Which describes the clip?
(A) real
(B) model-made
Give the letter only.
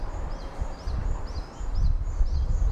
A